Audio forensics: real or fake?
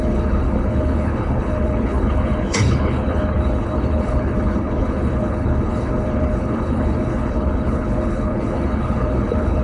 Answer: fake